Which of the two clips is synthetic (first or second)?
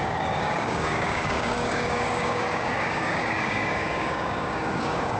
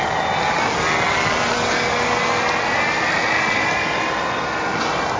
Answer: first